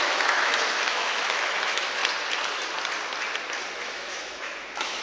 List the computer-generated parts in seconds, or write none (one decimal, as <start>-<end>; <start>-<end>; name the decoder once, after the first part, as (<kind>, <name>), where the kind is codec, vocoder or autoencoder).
0.0-2.0 (autoencoder, DAC-VAE); 3.7-5.0